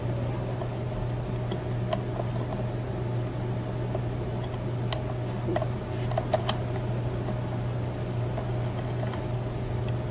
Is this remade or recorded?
recorded